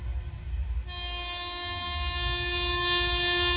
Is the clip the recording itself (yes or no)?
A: yes